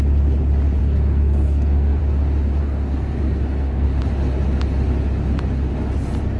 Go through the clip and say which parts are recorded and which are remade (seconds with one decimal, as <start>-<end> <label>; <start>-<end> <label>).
0.0-0.8 recorded; 0.8-2.0 remade; 2.0-2.6 recorded; 2.6-4.0 remade; 4.0-6.4 recorded